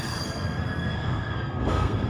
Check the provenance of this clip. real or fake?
fake